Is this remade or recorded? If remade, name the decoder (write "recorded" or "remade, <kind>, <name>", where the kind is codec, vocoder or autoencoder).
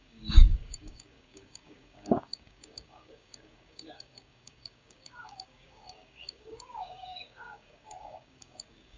remade, codec, DAC